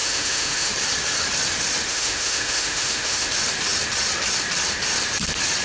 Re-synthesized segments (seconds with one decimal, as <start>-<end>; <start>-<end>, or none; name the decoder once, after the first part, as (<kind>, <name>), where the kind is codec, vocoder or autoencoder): 0.0-0.7 (autoencoder, DAC-VAE); 1.9-3.3